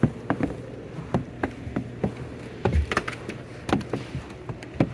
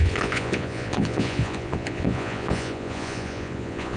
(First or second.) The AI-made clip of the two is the second